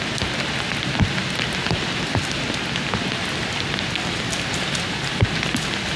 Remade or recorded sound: recorded